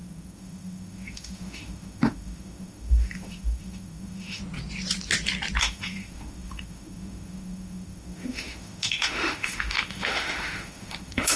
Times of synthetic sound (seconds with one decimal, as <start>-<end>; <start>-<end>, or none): 0.0-4.4; 5.6-11.4